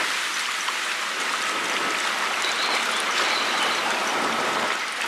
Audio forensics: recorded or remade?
recorded